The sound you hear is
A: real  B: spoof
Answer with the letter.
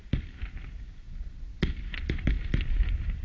A